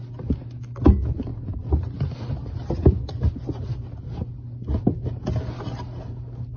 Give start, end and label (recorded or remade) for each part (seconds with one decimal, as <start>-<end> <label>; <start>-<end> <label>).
0.0-1.3 recorded; 1.3-1.8 remade; 1.8-6.6 recorded